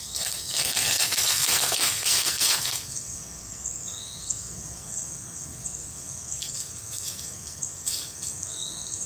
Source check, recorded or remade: remade